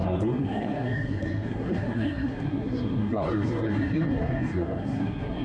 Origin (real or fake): fake